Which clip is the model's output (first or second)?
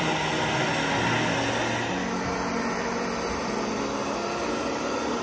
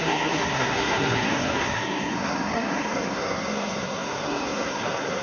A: second